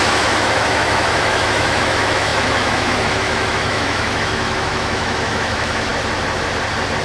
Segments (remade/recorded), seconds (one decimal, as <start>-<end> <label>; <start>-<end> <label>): 0.0-5.9 remade; 5.9-7.0 recorded